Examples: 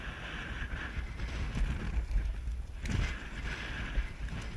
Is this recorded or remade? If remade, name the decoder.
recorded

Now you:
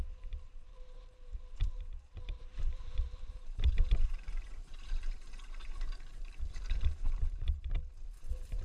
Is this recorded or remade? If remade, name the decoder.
remade, vocoder, BigVGAN v2